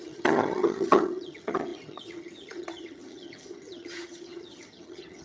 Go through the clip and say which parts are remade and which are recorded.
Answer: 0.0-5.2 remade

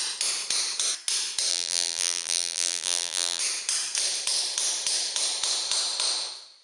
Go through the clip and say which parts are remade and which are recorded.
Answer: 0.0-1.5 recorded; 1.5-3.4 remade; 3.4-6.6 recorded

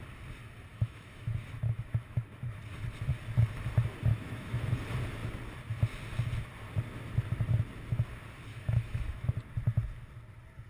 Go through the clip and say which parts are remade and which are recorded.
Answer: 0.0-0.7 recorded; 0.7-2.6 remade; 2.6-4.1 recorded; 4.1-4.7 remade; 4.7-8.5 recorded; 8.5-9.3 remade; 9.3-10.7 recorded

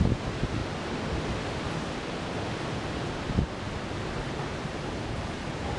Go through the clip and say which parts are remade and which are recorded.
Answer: 0.0-5.8 recorded

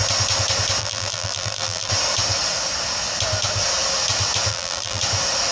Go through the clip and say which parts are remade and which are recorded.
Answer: 0.0-0.8 recorded; 0.8-1.9 remade; 1.9-4.5 recorded; 4.5-5.0 remade; 5.0-5.5 recorded